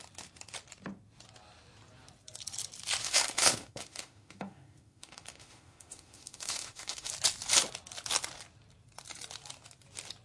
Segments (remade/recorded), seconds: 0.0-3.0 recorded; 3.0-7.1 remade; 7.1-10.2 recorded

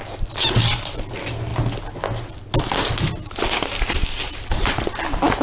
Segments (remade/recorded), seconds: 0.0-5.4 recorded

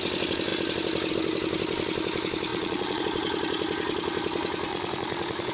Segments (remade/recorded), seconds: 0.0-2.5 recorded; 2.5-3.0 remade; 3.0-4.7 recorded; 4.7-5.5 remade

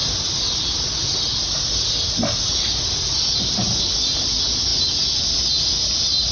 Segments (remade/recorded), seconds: 0.0-6.3 recorded

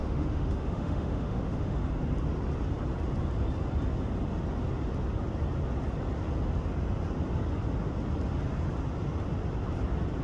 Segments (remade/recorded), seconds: 0.0-1.9 remade; 1.9-10.2 recorded